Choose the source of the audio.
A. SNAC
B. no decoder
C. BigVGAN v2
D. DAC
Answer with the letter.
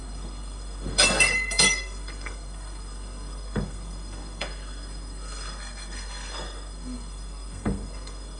A